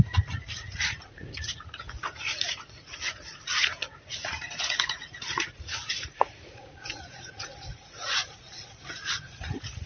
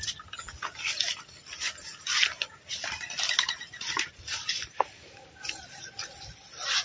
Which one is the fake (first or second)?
first